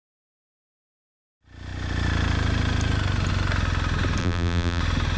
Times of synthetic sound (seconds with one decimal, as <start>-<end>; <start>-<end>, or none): 4.2-4.8